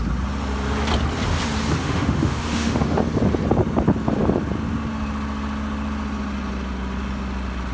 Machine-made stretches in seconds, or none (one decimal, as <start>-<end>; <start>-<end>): 1.8-3.0